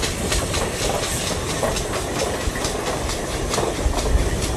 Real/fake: real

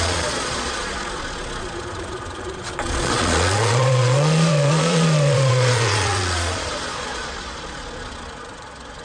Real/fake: fake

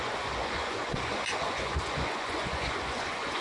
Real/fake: fake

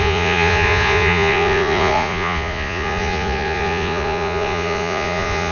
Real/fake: fake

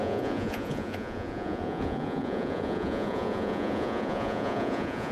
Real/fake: fake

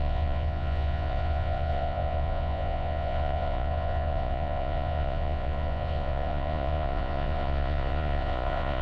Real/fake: fake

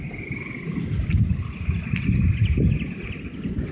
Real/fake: real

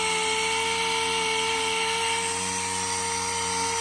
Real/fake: real